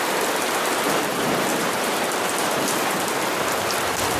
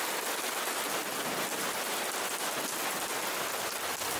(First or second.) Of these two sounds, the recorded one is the second